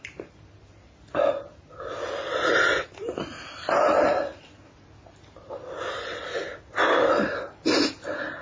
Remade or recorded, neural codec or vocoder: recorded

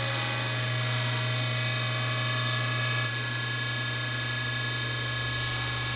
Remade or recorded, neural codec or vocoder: recorded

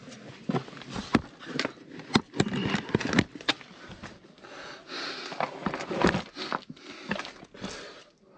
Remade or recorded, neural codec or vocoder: recorded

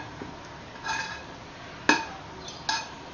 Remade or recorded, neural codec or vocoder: recorded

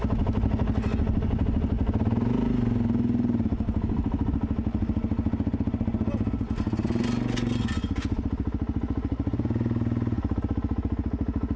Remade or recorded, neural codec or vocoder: recorded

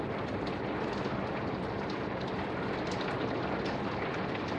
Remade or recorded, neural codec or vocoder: recorded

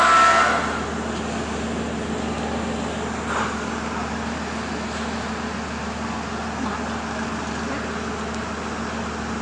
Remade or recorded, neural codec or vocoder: recorded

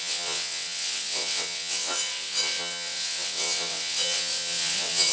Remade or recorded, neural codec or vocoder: remade, vocoder, WaveNeXt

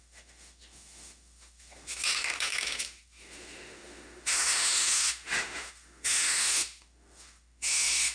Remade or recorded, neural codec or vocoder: remade, autoencoder, DAC-VAE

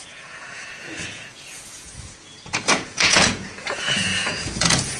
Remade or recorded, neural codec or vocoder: remade, vocoder, Vocos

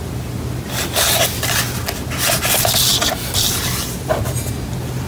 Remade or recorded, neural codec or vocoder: recorded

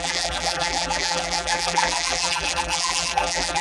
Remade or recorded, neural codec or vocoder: remade, vocoder, BigVGAN v2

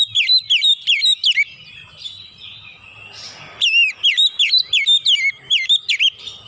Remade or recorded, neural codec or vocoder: recorded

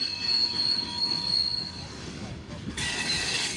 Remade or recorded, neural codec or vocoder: remade, codec, DAC